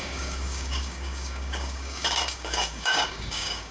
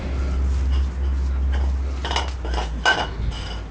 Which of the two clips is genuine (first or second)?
second